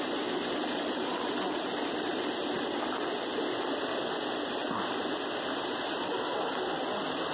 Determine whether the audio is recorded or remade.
recorded